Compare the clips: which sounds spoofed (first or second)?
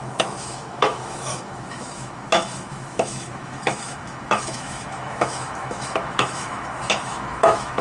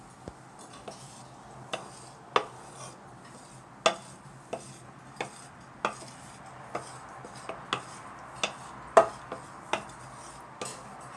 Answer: first